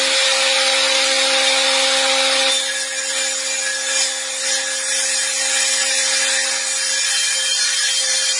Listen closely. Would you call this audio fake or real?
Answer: real